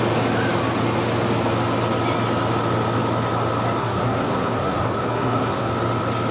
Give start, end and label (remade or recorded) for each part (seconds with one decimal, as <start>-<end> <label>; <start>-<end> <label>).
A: 0.0-3.8 recorded; 3.8-5.7 remade; 5.7-6.3 recorded